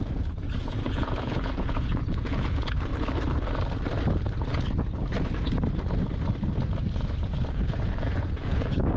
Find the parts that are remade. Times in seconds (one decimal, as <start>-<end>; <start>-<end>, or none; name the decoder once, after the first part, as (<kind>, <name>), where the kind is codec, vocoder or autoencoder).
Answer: 0.0-2.9 (vocoder, Vocos); 7.5-9.0